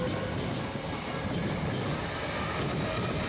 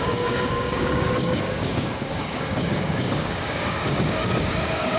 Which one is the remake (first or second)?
second